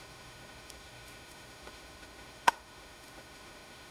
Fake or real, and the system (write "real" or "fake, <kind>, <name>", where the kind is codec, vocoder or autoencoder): fake, autoencoder, DAC-VAE